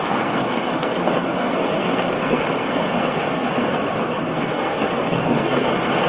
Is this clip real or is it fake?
fake